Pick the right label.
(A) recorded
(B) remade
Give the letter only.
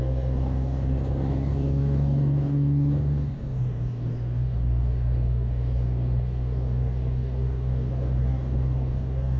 B